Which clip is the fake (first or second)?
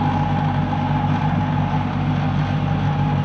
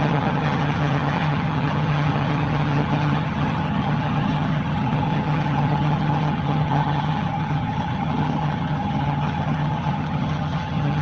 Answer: second